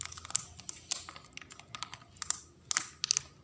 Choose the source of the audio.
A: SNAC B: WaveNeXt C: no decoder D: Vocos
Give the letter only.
C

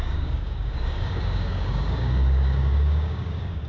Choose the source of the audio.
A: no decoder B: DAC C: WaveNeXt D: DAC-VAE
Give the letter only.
B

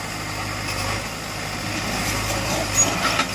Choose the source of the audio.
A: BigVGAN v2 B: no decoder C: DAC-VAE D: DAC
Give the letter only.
B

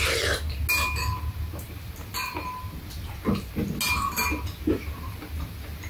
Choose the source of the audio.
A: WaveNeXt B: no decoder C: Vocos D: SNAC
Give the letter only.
B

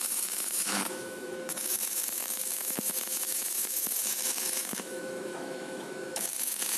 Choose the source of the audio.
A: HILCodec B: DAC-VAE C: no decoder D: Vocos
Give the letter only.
B